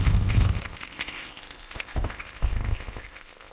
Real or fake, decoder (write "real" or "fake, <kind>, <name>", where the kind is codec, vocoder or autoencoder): fake, codec, ZipCodec